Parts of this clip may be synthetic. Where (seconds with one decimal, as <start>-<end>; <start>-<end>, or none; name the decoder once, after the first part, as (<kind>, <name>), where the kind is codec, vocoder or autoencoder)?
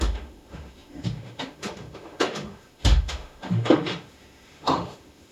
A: 0.0-5.3 (autoencoder, DAC-VAE)